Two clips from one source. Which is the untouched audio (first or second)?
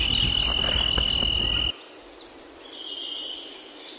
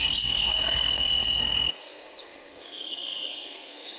first